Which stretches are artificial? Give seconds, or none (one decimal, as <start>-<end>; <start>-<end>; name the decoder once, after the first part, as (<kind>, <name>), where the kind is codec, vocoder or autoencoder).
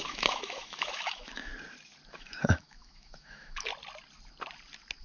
0.0-1.5 (autoencoder, DAC-VAE); 2.1-3.7